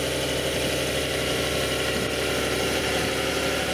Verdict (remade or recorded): recorded